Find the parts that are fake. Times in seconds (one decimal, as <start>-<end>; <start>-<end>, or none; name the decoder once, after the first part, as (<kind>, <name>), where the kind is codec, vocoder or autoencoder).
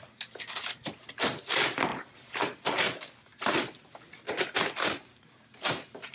none